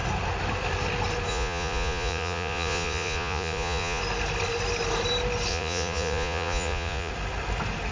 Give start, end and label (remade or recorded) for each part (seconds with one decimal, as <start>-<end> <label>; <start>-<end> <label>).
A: 0.0-1.3 recorded; 1.3-4.0 remade; 4.0-5.5 recorded; 5.5-7.1 remade; 7.1-7.9 recorded